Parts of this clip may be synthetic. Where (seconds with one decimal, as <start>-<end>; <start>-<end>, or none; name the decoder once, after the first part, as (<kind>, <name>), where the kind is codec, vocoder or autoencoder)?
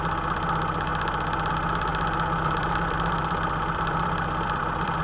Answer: 1.9-5.0 (vocoder, BigVGAN v2)